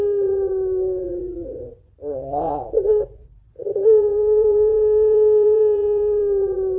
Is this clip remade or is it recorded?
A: remade